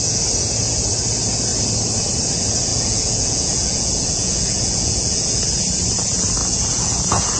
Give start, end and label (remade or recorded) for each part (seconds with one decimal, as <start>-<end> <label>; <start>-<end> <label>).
0.0-2.7 recorded; 2.7-5.4 remade; 5.4-6.4 recorded; 6.4-7.4 remade